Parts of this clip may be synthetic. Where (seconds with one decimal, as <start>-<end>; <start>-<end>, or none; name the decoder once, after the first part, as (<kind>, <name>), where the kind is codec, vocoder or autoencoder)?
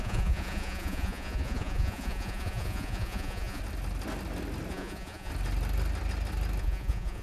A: 0.0-3.6 (vocoder, Vocos); 4.7-5.3; 6.6-7.2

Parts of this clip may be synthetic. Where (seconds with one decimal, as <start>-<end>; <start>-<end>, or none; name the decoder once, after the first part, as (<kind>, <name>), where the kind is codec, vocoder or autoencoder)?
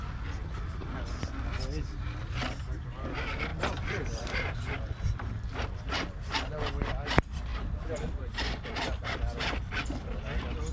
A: 3.5-6.1 (vocoder, BigVGAN v2); 7.5-10.2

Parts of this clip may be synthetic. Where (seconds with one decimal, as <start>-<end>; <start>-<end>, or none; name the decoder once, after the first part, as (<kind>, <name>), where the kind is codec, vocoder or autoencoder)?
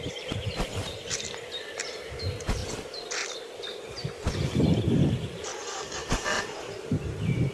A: 0.0-7.5 (vocoder, BigVGAN v2)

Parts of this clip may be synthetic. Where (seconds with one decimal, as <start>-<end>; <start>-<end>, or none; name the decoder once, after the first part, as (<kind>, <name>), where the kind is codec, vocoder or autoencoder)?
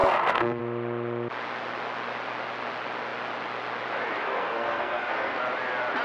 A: 0.0-0.6 (codec, SNAC); 4.3-5.4